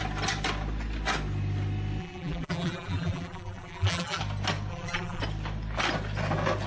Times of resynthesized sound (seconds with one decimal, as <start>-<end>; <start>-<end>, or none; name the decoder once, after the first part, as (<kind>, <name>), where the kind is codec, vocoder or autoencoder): 2.0-4.2 (vocoder, BigVGAN v2); 4.7-5.2